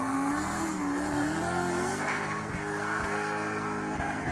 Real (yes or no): no